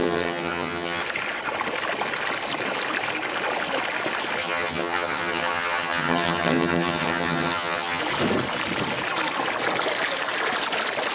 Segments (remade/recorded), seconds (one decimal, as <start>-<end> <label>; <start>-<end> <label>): 0.0-1.0 remade; 1.0-4.4 recorded; 4.4-8.0 remade; 8.0-11.1 recorded